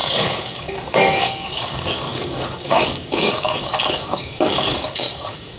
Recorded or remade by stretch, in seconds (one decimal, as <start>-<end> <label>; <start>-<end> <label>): 0.0-5.6 remade

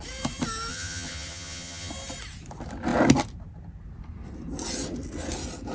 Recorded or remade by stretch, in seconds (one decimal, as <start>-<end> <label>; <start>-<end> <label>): 0.0-0.7 recorded; 0.7-1.9 remade; 1.9-5.7 recorded